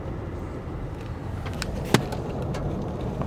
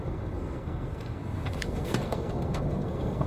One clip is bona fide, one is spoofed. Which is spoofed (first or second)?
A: second